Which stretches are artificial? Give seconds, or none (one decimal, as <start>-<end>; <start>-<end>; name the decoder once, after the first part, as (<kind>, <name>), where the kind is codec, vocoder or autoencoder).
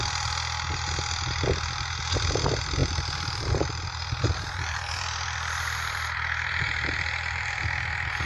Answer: 2.8-7.6 (vocoder, BigVGAN v2)